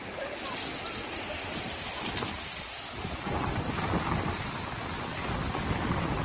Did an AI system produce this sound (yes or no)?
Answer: yes